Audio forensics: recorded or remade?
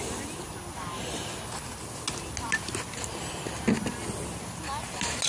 recorded